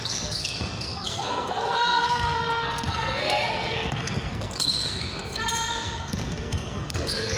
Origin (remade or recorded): remade